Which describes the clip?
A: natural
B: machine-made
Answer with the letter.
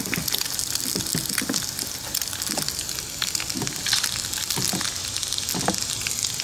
A